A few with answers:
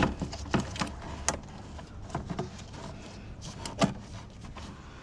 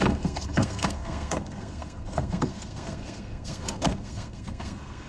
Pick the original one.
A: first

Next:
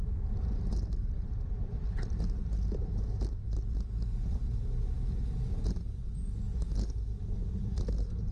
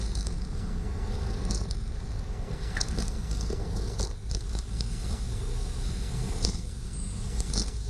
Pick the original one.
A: first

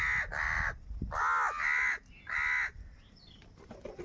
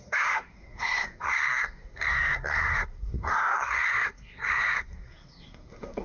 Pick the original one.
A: first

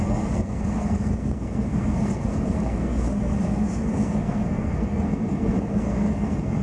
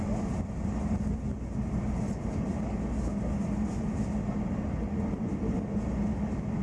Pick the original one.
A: second